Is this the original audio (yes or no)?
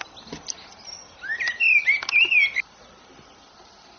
yes